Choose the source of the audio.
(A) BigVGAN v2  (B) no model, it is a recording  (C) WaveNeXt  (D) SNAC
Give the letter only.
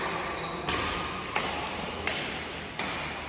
B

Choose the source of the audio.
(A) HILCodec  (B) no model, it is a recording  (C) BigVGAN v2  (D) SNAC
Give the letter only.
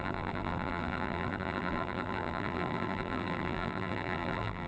C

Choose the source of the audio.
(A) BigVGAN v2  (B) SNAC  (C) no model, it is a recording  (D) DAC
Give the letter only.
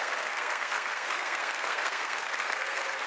B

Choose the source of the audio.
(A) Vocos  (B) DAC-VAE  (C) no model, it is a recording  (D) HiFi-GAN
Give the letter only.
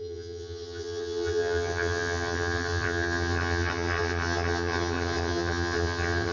D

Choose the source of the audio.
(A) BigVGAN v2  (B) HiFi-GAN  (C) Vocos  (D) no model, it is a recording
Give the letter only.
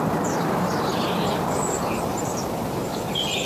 A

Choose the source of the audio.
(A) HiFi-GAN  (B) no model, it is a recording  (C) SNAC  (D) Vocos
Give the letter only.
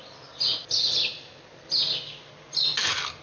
B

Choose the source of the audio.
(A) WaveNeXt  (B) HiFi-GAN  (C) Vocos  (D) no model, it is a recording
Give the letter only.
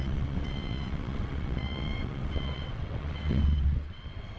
A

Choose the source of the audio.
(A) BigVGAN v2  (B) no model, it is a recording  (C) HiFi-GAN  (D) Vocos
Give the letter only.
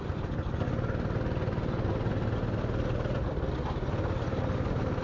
B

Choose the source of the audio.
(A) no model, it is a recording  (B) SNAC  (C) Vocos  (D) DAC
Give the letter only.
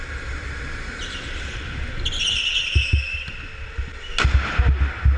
A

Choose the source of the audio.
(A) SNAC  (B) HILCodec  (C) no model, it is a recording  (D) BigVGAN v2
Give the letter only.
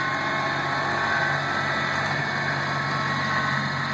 C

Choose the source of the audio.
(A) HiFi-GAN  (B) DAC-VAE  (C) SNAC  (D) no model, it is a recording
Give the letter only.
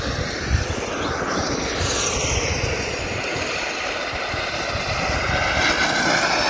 D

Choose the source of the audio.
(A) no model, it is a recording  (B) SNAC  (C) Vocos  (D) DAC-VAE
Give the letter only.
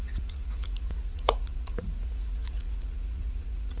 C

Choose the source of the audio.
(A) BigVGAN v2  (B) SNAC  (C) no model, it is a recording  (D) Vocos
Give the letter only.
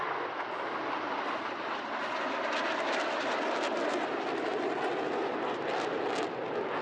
C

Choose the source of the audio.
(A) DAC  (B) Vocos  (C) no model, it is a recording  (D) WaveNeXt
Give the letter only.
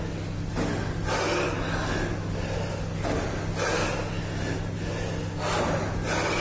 C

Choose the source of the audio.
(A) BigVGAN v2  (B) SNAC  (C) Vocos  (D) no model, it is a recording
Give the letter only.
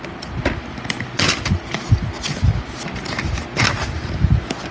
D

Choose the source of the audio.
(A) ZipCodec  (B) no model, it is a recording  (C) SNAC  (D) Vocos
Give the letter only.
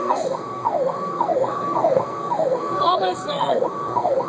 C